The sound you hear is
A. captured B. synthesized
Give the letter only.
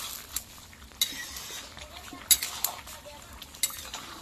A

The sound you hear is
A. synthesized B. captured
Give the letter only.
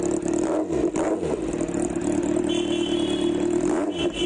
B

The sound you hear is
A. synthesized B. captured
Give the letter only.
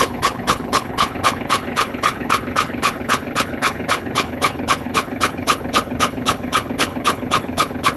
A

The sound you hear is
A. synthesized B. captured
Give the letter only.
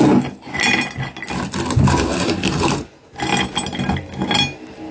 B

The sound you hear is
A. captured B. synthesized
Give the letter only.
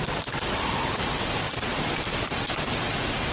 A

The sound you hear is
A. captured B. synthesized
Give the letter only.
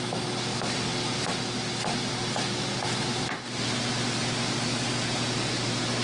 A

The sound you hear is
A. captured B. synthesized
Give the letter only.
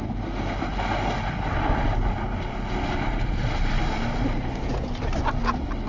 A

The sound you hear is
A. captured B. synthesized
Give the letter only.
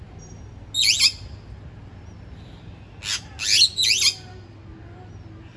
A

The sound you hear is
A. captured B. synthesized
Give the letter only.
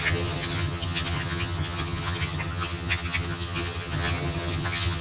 B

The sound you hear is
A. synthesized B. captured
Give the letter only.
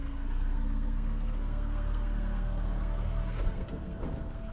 A